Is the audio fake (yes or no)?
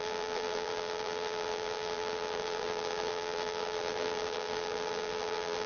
yes